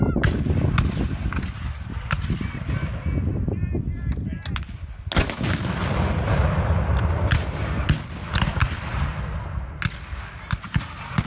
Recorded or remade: recorded